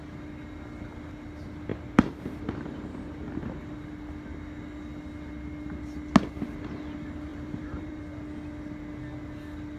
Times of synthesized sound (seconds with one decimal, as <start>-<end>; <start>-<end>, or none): 7.3-8.0